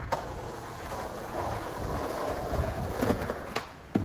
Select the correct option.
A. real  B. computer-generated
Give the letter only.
B